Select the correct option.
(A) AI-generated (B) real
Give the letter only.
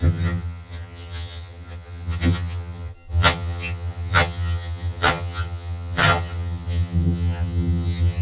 A